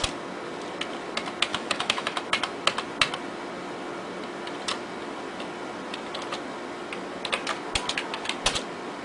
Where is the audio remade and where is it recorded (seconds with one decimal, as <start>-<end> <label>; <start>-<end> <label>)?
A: 0.0-1.5 recorded; 1.5-2.2 remade; 2.2-9.0 recorded